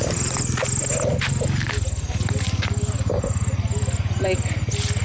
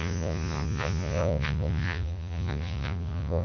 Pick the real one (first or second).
first